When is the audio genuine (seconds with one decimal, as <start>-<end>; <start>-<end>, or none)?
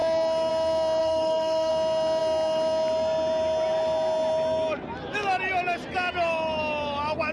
0.0-1.0; 1.7-7.3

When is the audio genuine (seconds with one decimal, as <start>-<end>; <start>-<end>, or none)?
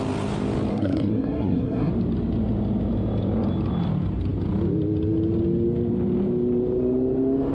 0.0-0.7; 1.9-7.5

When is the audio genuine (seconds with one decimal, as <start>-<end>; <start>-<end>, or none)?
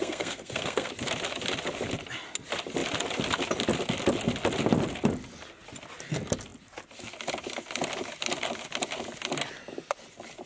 0.9-10.5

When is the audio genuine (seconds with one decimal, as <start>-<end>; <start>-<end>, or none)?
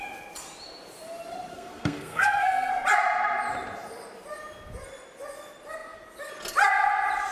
0.0-1.5; 2.7-7.3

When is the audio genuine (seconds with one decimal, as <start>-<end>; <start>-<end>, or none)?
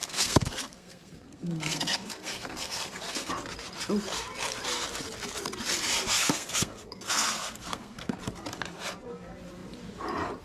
3.3-6.2; 8.2-10.4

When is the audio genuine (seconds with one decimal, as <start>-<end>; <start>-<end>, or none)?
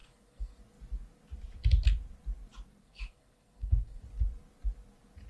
0.6-2.8; 4.0-5.3